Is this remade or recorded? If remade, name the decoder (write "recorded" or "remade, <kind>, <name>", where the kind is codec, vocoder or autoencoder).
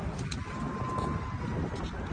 recorded